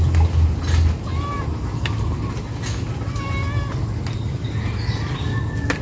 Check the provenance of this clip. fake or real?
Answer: real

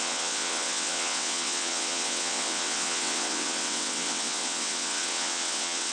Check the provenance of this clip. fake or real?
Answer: fake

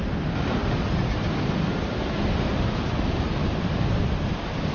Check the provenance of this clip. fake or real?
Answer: real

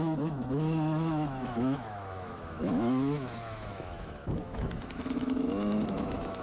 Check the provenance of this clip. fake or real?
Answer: fake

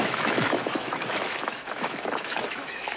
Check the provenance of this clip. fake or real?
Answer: fake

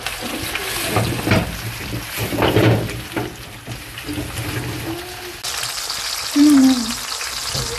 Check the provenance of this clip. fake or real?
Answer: real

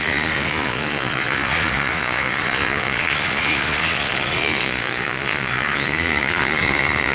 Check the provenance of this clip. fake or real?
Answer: fake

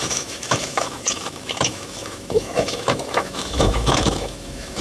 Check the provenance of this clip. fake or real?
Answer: fake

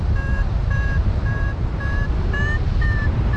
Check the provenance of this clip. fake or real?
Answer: fake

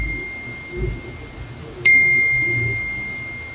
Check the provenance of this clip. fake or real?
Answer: real